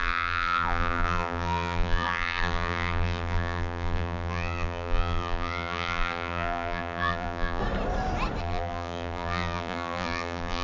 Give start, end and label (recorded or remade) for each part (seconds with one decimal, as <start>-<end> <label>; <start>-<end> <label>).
0.0-7.6 remade; 7.6-8.4 recorded; 8.4-10.6 remade